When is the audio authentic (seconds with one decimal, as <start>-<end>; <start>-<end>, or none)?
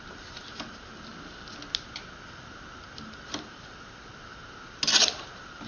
1.1-2.8; 4.0-5.0